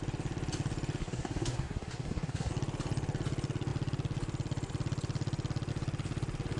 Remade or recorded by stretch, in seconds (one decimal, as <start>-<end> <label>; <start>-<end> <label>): 0.0-1.0 recorded; 1.0-2.5 remade; 2.5-6.6 recorded